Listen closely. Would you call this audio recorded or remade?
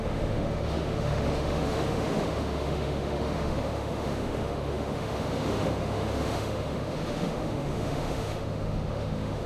remade